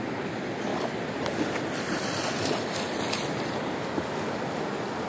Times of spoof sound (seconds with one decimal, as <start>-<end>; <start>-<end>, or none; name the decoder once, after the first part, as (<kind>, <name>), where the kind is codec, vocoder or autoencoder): none